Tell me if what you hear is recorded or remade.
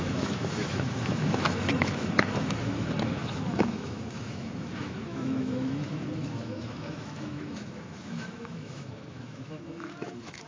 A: remade